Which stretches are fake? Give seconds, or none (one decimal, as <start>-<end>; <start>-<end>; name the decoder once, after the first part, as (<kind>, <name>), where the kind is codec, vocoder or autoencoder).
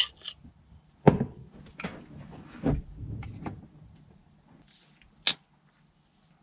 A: none